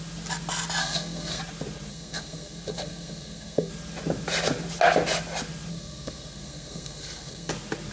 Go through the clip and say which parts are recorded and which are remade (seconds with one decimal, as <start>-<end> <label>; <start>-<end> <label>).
0.0-0.8 recorded; 0.8-1.4 remade; 1.4-1.9 recorded; 1.9-3.7 remade; 3.7-5.7 recorded; 5.7-7.5 remade; 7.5-7.9 recorded